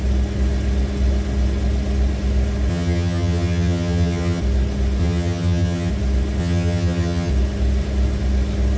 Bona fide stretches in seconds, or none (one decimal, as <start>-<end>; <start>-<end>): 0.0-2.7; 4.4-5.0; 5.9-6.4; 7.3-8.8